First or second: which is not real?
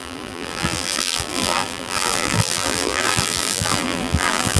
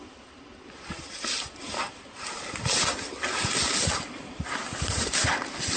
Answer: first